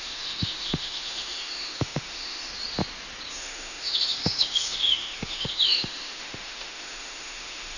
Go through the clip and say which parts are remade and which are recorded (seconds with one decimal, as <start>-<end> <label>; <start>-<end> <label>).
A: 0.0-2.5 remade; 2.5-3.3 recorded; 3.3-7.8 remade